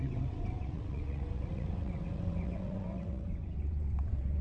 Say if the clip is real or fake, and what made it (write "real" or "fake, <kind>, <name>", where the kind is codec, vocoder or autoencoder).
fake, vocoder, WaveNeXt